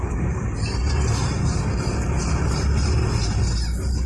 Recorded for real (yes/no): yes